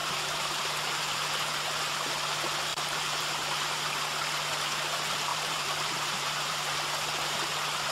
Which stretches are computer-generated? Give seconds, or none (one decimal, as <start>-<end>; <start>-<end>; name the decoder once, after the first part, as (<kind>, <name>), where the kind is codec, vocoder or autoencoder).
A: 0.0-0.6 (vocoder, BigVGAN v2); 2.7-3.5; 5.3-6.7